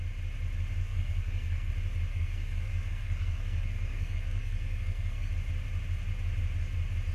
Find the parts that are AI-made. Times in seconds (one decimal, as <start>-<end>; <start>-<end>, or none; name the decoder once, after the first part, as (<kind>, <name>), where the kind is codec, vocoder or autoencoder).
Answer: 0.8-1.7 (codec, SNAC); 2.1-5.3